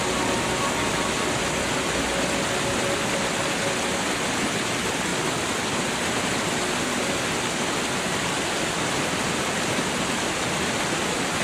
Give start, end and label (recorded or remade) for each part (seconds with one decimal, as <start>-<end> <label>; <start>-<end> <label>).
0.0-11.4 recorded